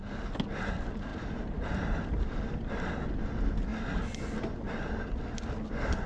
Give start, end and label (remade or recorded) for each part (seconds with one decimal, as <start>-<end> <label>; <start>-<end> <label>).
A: 0.0-1.1 recorded; 1.1-2.9 remade; 2.9-3.7 recorded; 3.7-4.9 remade; 4.9-6.1 recorded